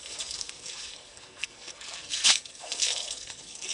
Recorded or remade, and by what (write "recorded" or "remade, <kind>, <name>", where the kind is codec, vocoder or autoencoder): remade, codec, SNAC